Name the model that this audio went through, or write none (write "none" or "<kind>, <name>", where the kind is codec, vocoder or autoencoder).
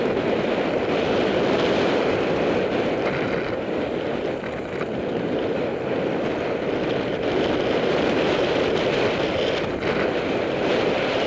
none